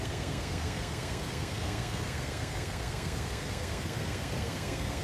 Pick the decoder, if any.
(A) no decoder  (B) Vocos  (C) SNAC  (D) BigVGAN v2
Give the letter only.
C